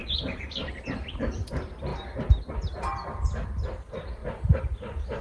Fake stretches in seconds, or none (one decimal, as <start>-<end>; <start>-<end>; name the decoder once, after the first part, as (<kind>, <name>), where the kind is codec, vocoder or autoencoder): 1.9-2.5 (vocoder, BigVGAN v2); 4.2-5.2